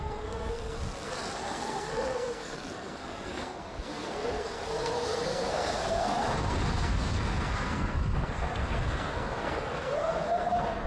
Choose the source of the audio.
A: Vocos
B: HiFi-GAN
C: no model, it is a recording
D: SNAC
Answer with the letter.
D